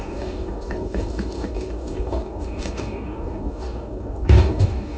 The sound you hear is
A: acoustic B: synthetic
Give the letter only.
B